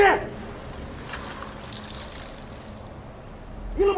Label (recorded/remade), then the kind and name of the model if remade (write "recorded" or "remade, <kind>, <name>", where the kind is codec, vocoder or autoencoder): recorded